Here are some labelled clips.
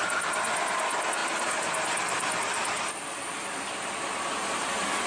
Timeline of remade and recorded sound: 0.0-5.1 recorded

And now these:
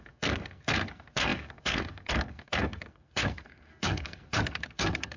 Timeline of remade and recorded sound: 0.0-5.2 remade

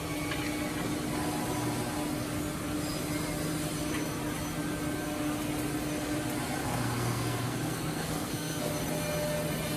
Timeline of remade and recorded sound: 0.0-6.6 recorded; 6.6-8.7 remade; 8.7-9.8 recorded

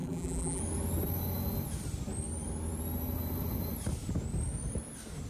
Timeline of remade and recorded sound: 0.0-0.6 remade; 0.6-5.3 recorded